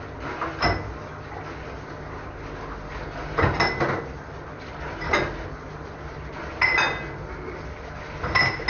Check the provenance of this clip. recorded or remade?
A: recorded